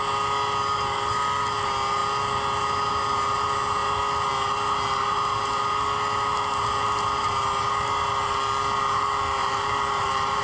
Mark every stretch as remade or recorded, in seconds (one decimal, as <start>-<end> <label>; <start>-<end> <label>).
0.0-9.4 recorded; 9.4-10.4 remade